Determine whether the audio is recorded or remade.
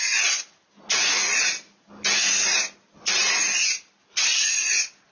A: recorded